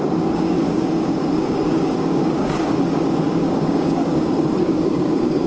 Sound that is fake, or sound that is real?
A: fake